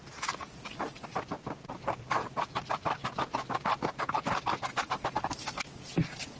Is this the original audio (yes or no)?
yes